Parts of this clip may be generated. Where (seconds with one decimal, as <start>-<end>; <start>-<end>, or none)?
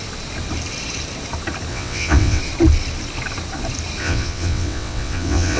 1.7-2.4; 4.0-5.6